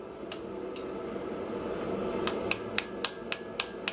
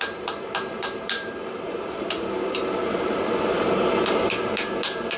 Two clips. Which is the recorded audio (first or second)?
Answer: first